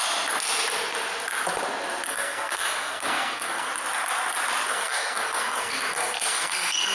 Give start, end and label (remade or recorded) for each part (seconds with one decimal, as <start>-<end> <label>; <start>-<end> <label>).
0.0-2.1 recorded; 2.1-3.7 remade; 3.7-4.7 recorded; 4.7-6.9 remade